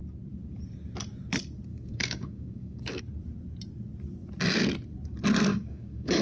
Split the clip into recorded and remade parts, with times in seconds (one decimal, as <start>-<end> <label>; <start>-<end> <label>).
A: 0.0-1.7 recorded; 1.7-3.0 remade; 3.0-5.5 recorded; 5.5-6.2 remade